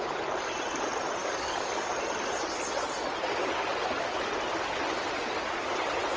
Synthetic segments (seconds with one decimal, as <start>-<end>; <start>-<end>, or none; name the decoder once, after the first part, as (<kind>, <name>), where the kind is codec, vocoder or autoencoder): 1.2-1.9 (codec, DAC)